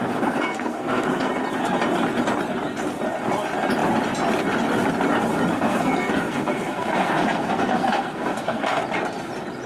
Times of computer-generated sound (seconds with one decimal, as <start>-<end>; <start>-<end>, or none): 0.0-1.3; 5.5-8.8